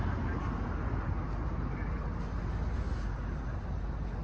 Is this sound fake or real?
real